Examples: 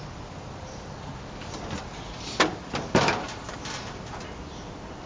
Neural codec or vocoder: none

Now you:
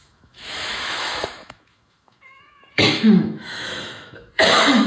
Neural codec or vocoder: autoencoder, DAC-VAE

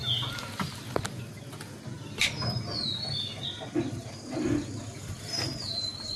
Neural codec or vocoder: none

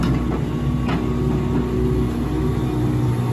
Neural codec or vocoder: none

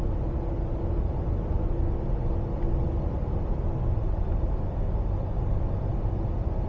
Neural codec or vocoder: none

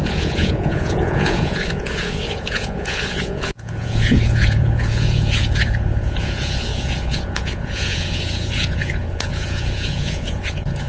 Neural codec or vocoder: vocoder, Vocos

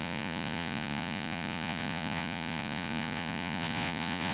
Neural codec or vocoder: vocoder, Vocos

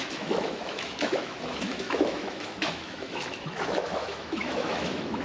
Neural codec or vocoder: autoencoder, DAC-VAE